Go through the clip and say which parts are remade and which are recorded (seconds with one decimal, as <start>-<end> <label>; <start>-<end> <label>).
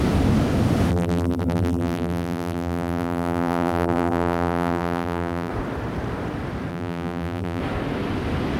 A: 0.0-0.9 recorded; 0.9-5.5 remade; 5.5-6.7 recorded; 6.7-7.6 remade; 7.6-8.6 recorded